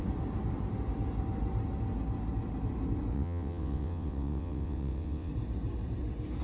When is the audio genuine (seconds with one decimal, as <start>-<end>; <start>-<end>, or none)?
0.0-3.1; 5.3-6.4